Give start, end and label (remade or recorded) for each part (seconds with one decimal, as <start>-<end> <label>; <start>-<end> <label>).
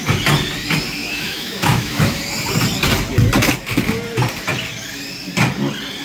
0.0-1.0 recorded; 1.0-2.2 remade; 2.2-6.0 recorded